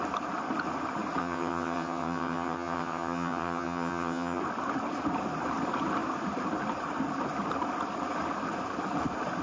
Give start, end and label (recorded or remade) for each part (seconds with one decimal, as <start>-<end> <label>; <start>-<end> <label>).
0.0-1.2 recorded; 1.2-4.4 remade; 4.4-9.4 recorded